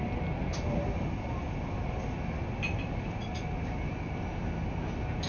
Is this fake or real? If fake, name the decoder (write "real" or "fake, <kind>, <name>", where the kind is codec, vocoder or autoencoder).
real